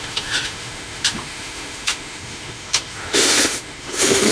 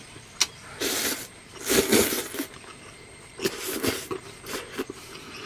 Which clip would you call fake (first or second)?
first